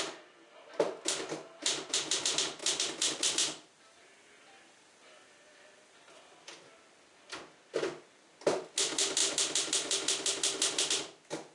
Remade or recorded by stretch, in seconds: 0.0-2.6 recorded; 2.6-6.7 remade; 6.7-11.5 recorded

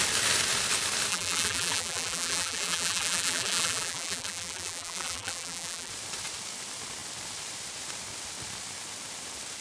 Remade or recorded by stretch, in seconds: 0.0-1.1 recorded; 1.1-5.9 remade; 5.9-9.6 recorded